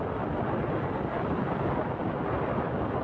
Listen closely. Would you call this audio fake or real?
real